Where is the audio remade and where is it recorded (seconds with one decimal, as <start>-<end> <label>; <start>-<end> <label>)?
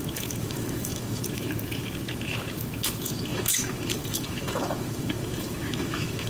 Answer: 0.0-6.3 remade